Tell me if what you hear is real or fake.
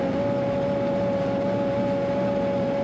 real